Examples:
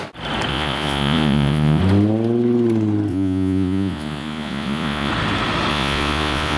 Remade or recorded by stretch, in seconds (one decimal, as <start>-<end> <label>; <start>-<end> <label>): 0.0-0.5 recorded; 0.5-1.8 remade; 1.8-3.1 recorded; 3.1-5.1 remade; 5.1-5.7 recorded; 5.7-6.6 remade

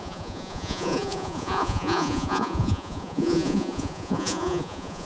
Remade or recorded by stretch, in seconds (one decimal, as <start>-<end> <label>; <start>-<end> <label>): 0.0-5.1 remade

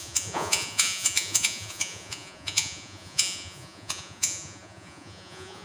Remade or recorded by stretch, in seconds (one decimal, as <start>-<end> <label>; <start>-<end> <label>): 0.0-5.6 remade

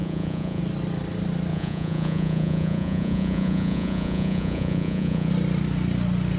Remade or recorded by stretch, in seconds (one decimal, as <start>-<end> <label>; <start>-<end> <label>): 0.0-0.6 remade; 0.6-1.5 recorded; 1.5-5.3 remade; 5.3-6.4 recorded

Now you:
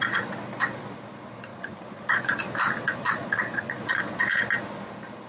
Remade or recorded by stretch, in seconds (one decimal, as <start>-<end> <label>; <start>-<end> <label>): 0.0-1.5 recorded; 1.5-4.2 remade; 4.2-5.3 recorded

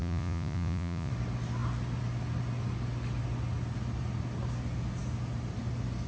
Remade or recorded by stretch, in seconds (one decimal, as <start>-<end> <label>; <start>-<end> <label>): 0.0-1.1 remade; 1.1-6.1 recorded